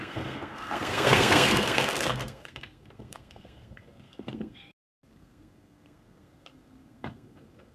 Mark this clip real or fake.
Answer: fake